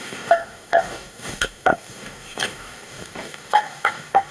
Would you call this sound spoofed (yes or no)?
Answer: yes